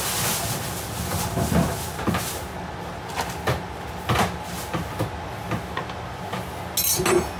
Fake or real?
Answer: real